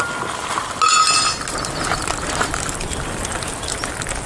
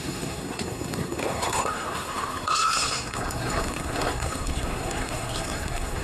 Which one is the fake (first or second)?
second